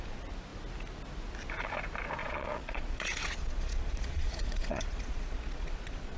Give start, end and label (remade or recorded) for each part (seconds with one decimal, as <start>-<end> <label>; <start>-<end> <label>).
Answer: 0.0-2.2 recorded; 2.2-6.2 remade